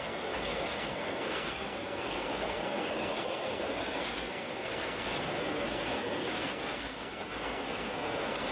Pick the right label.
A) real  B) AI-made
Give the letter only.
B